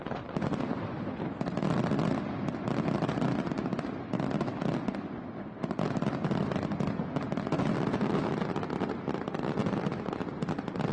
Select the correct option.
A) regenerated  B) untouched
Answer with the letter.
B